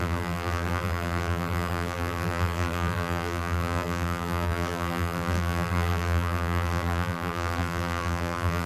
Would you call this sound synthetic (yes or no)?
yes